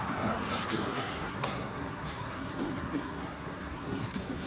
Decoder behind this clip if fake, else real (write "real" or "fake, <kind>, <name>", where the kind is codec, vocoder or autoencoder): fake, codec, SNAC